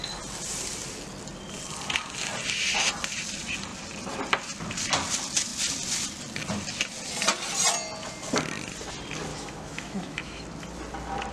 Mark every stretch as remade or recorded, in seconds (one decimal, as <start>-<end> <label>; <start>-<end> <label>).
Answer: 0.0-9.3 recorded; 9.3-10.4 remade; 10.4-11.3 recorded